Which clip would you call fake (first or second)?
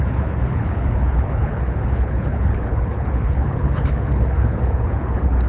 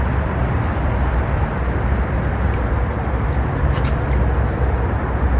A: first